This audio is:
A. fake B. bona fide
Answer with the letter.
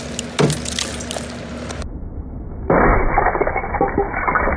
B